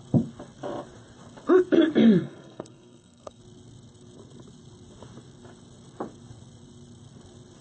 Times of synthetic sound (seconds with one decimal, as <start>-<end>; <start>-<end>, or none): 2.2-3.4